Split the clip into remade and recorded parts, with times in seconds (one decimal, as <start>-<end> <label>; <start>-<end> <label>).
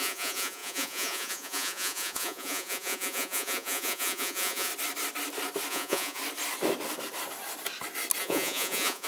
0.0-4.7 remade; 4.7-5.7 recorded; 5.7-6.2 remade; 6.2-8.2 recorded; 8.2-9.1 remade